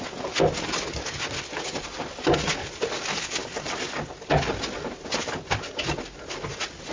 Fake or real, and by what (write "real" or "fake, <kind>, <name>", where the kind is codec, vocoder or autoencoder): real